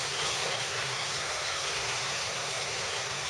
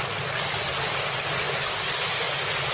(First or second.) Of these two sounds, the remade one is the first